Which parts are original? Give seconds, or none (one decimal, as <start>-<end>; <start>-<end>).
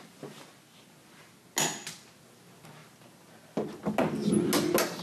0.0-5.0